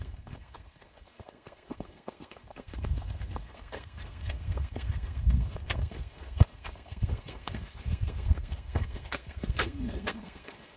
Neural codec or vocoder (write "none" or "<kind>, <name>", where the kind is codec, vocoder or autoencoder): codec, SNAC